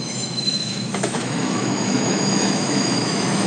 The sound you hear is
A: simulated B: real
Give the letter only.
A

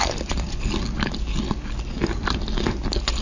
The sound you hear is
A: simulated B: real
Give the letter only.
B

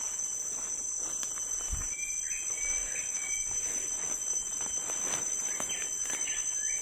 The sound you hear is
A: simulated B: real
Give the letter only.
B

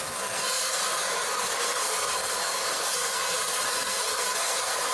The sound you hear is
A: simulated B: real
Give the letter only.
A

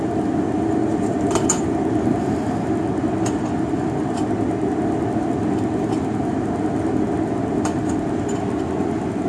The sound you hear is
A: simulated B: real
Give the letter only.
B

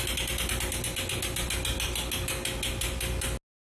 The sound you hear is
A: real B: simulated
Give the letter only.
A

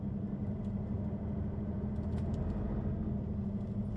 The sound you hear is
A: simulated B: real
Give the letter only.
B